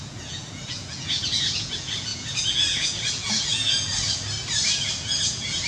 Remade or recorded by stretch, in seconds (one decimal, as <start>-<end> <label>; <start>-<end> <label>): 0.0-3.9 remade; 3.9-5.0 recorded; 5.0-5.7 remade